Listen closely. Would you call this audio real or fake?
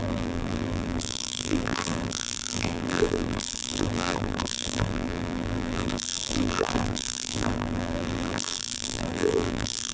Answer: fake